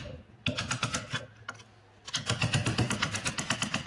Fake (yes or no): no